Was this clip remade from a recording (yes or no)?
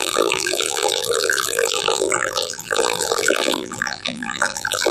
yes